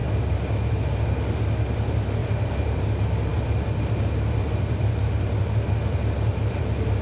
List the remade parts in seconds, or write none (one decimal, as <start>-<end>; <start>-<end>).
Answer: 2.2-2.8; 3.3-7.0